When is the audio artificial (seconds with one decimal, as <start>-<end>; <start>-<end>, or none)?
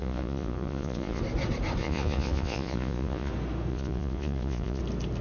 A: 0.0-1.2; 1.8-3.3; 3.7-4.8